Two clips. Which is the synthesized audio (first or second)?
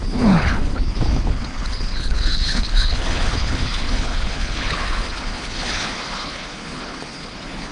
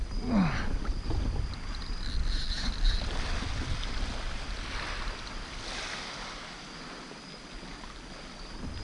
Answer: first